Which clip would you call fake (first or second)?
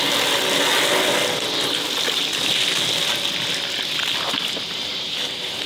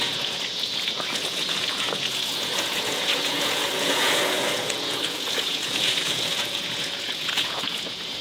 second